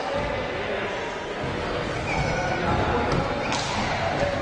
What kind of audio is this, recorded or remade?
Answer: recorded